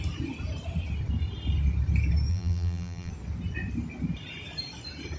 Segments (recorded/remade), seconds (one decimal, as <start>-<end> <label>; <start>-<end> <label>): 0.0-2.3 recorded; 2.3-3.1 remade; 3.1-5.2 recorded